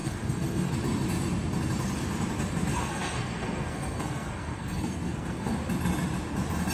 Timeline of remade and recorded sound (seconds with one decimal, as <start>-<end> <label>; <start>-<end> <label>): 0.0-0.7 remade; 0.7-2.7 recorded; 2.7-5.5 remade; 5.5-6.7 recorded

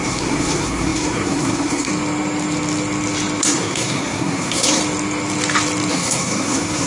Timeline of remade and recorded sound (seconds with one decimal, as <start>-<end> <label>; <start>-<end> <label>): 0.0-1.9 remade; 1.9-3.4 recorded; 3.4-4.8 remade; 4.8-5.9 recorded; 5.9-6.9 remade

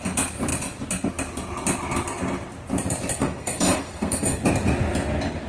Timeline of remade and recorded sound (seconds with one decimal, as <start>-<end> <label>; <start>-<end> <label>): 0.0-3.2 recorded; 3.2-4.4 remade; 4.4-5.5 recorded

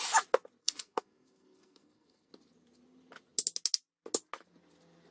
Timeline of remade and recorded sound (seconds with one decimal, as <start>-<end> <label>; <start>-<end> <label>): 0.0-0.6 recorded; 0.6-2.3 remade; 2.3-5.1 recorded

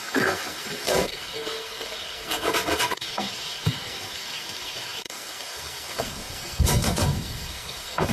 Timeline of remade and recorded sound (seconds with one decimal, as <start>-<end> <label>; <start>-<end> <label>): 0.0-8.1 remade

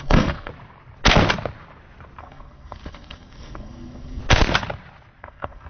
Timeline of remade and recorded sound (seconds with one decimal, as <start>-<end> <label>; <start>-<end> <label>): 0.0-0.5 remade; 0.5-2.2 recorded; 2.2-4.2 remade; 4.2-5.2 recorded; 5.2-5.7 remade

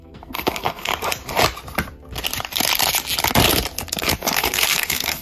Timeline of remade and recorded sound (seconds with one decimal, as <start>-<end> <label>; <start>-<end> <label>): 0.0-0.9 remade; 0.9-4.0 recorded; 4.0-5.2 remade

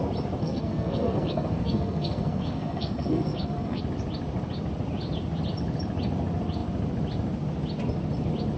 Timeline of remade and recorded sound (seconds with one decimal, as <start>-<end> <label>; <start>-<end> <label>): 0.0-0.4 recorded; 0.4-3.8 remade; 3.8-8.6 recorded